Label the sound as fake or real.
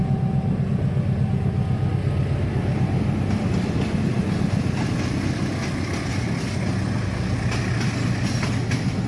real